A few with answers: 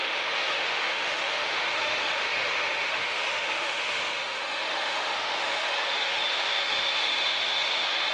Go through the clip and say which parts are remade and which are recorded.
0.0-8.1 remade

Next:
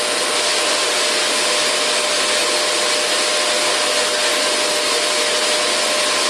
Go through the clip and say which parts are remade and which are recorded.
0.0-6.3 recorded

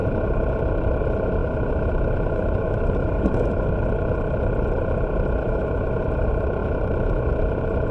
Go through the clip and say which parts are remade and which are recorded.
0.0-1.4 recorded; 1.4-3.8 remade; 3.8-5.4 recorded; 5.4-6.0 remade; 6.0-7.9 recorded

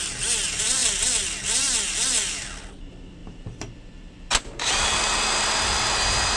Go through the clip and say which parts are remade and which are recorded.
0.0-6.4 recorded